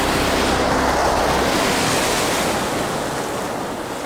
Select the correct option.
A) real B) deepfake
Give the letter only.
A